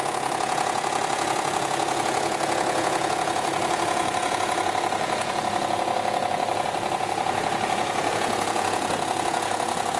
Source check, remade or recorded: remade